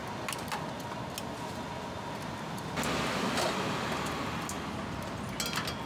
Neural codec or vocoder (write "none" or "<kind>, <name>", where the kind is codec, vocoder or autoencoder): none